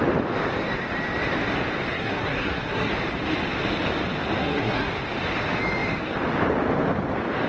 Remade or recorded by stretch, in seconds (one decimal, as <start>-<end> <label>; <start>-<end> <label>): 0.0-1.9 recorded; 1.9-2.9 remade; 2.9-4.4 recorded; 4.4-4.9 remade; 4.9-7.5 recorded